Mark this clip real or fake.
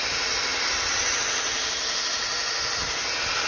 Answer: real